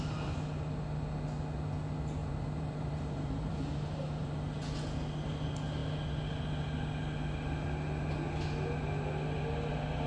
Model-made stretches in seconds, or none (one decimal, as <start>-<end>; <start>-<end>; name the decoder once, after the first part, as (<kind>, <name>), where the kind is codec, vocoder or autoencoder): 2.2-4.3 (vocoder, BigVGAN v2)